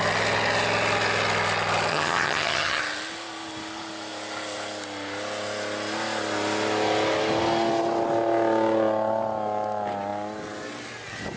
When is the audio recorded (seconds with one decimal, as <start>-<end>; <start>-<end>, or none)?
0.0-1.9; 2.8-11.4